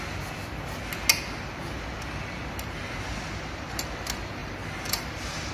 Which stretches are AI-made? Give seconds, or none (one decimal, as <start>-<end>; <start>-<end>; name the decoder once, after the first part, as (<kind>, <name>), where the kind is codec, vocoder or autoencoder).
4.4-5.5 (vocoder, BigVGAN v2)